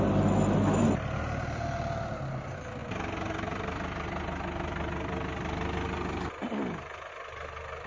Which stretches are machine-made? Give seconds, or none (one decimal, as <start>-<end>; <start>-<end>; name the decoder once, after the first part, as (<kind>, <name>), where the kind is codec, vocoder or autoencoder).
none